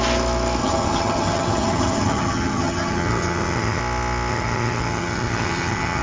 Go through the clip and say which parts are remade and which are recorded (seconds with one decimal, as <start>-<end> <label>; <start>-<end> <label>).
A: 0.0-0.6 recorded; 0.6-3.8 remade; 3.8-4.3 recorded; 4.3-6.0 remade